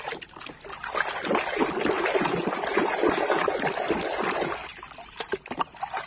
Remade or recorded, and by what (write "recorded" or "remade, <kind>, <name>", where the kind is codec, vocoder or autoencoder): recorded